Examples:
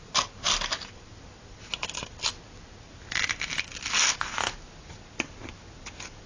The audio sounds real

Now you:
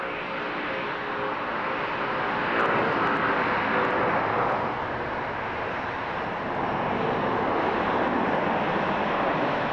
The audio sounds real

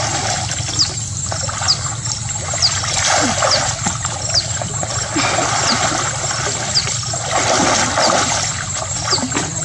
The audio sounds real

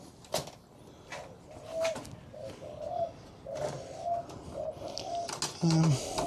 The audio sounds real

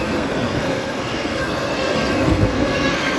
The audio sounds fake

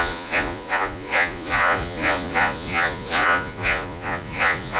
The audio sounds fake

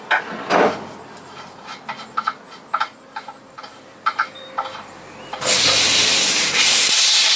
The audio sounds real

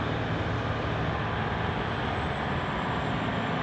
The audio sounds real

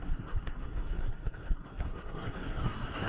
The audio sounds fake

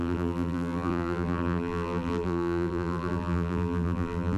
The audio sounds fake